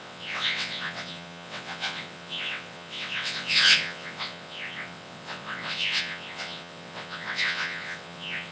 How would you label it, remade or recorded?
remade